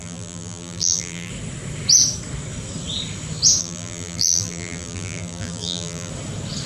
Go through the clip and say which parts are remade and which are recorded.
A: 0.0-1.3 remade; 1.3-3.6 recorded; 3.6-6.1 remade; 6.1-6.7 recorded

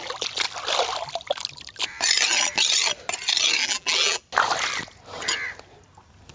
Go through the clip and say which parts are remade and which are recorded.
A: 0.0-3.6 recorded; 3.6-4.2 remade; 4.2-6.3 recorded

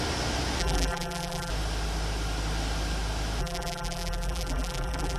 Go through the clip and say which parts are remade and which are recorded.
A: 0.0-0.6 recorded; 0.6-1.5 remade; 1.5-3.4 recorded; 3.4-5.2 remade

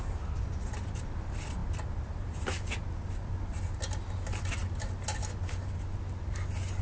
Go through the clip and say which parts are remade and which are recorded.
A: 0.0-6.8 recorded

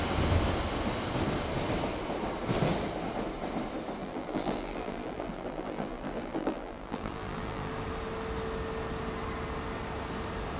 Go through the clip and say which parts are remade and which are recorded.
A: 0.0-4.0 recorded; 4.0-7.7 remade; 7.7-10.6 recorded

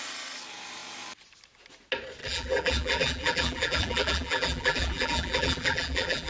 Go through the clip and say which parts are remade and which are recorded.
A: 0.0-2.2 recorded; 2.2-6.3 remade

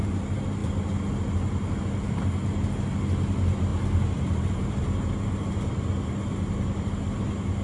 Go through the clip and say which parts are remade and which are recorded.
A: 0.0-3.7 recorded; 3.7-4.8 remade; 4.8-7.6 recorded